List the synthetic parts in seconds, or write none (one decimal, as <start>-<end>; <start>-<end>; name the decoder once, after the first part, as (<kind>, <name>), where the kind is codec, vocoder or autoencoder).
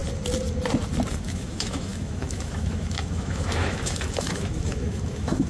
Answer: 1.1-5.5 (autoencoder, DAC-VAE)